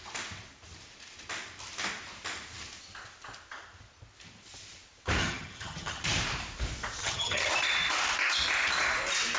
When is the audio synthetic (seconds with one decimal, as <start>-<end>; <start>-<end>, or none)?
5.2-6.0; 7.0-7.5